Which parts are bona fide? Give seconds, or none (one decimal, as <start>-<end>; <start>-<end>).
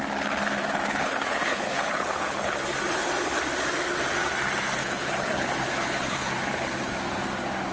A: 0.0-0.6; 2.5-4.8; 6.9-7.7